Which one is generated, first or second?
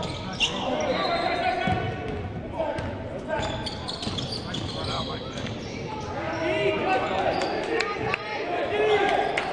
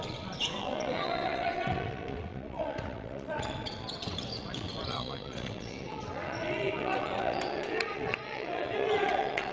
second